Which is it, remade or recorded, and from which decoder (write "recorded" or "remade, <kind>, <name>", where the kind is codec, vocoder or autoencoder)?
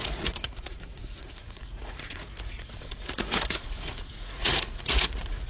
remade, vocoder, Vocos